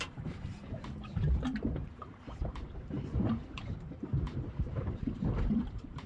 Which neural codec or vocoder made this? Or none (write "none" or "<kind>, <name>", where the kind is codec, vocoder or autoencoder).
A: vocoder, BigVGAN v2